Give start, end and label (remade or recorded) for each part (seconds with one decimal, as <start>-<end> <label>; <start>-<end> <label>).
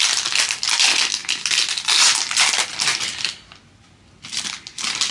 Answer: 0.0-5.1 recorded